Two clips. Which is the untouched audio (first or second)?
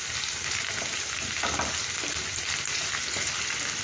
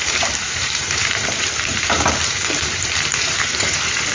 first